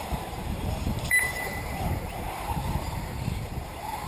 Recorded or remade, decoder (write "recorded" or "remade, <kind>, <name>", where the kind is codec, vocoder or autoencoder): remade, vocoder, BigVGAN v2